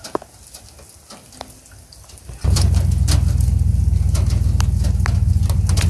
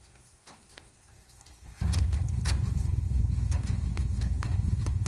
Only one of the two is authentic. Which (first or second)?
first